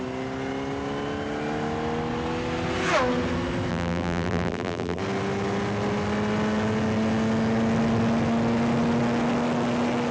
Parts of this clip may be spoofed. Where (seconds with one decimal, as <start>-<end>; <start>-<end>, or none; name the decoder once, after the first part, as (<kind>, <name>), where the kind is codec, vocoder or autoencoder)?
3.7-5.0 (vocoder, BigVGAN v2)